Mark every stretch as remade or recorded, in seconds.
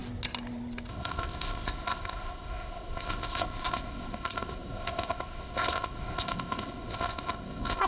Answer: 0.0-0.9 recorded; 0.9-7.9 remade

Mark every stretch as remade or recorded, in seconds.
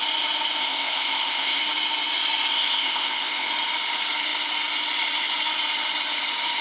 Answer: 0.0-0.6 recorded; 0.6-1.6 remade; 1.6-2.5 recorded; 2.5-3.5 remade; 3.5-6.6 recorded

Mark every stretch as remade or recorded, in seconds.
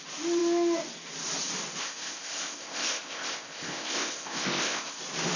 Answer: 0.0-1.8 recorded; 1.8-5.0 remade; 5.0-5.4 recorded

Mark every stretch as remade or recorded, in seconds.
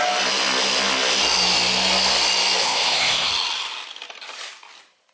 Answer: 0.0-2.6 recorded; 2.6-3.3 remade; 3.3-5.1 recorded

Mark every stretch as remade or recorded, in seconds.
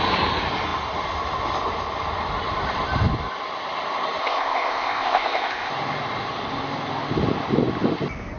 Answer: 0.0-4.2 recorded; 4.2-5.7 remade; 5.7-8.4 recorded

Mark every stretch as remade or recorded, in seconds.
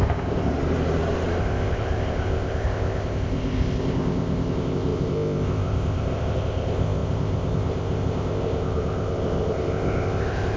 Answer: 0.0-0.5 remade; 0.5-1.4 recorded; 1.4-10.6 remade